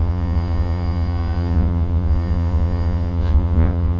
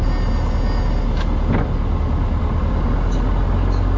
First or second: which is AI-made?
first